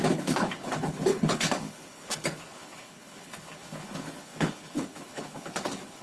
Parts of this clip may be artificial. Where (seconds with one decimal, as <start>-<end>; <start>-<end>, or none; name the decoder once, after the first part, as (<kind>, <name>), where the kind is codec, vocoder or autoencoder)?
0.0-6.0 (codec, HILCodec)